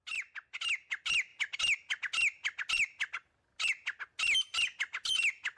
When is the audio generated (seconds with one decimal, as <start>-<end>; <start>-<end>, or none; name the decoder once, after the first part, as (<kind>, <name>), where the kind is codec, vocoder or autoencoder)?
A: none